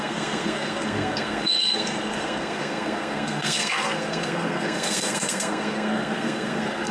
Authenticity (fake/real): fake